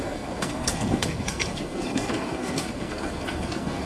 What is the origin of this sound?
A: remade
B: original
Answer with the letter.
A